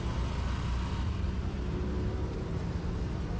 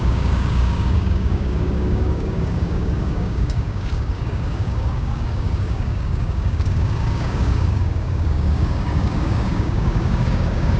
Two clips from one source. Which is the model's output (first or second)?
second